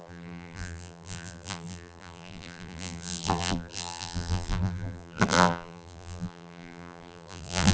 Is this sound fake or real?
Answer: fake